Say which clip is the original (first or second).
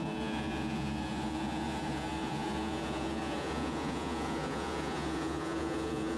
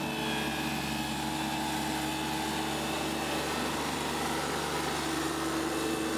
second